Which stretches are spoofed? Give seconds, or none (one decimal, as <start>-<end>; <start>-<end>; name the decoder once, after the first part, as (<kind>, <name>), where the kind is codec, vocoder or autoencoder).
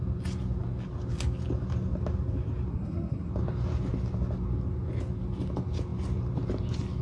2.7-3.3 (codec, SNAC)